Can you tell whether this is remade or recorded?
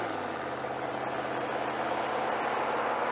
recorded